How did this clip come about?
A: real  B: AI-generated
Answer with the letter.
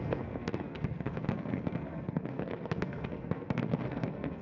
B